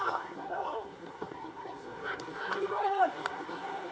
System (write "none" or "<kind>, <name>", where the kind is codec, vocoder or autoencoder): codec, SNAC